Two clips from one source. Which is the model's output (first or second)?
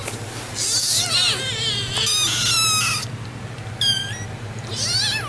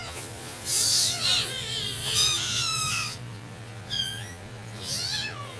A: second